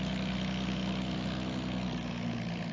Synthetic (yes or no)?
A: no